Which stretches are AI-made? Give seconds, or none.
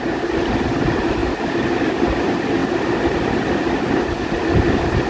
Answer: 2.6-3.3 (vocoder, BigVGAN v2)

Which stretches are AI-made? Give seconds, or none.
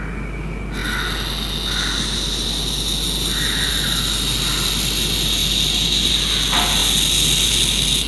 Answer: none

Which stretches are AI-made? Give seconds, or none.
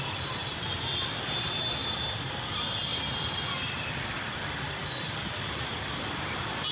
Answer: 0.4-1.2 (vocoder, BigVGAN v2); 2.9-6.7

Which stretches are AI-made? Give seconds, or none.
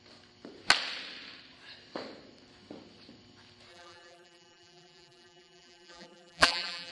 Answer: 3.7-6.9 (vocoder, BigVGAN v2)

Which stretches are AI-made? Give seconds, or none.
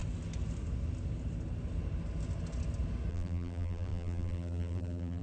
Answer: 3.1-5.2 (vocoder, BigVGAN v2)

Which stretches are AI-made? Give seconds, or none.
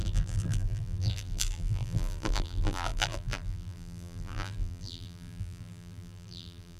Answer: 0.0-6.8 (vocoder, BigVGAN v2)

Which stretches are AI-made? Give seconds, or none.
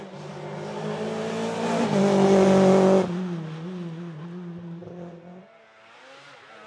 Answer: none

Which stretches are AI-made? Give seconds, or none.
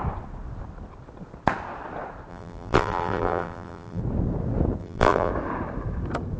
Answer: 2.3-4.0 (vocoder, BigVGAN v2); 4.8-5.3